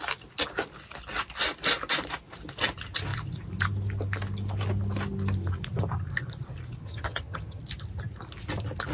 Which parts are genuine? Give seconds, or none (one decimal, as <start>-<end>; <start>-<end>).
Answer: 0.0-6.8; 7.6-8.9